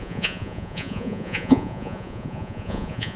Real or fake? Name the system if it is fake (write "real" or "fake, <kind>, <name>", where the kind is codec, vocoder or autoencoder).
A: fake, vocoder, Vocos